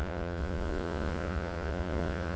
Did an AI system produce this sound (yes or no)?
yes